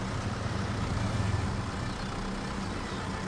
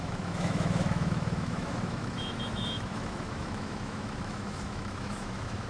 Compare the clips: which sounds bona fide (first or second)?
first